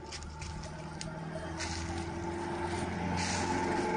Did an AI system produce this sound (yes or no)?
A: no